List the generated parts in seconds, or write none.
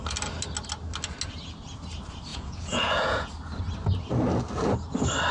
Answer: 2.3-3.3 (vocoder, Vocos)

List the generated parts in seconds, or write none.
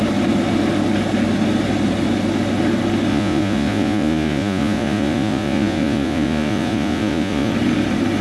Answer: 3.1-7.5 (vocoder, Vocos)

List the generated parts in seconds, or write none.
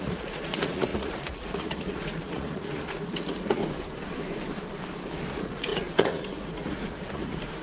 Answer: 0.0-3.6 (vocoder, Vocos); 5.3-7.6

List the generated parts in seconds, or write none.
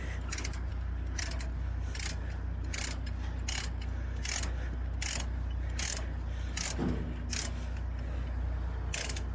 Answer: none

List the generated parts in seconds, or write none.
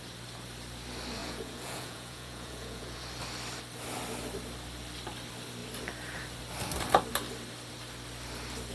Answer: 1.2-3.0 (vocoder, Vocos)